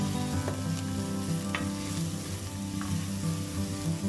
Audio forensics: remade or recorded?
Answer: recorded